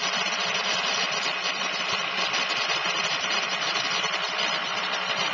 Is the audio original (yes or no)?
yes